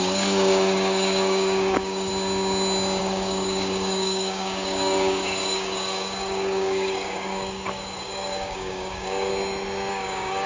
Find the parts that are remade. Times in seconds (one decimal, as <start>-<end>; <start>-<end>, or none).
0.0-2.1; 3.0-9.3; 9.9-10.5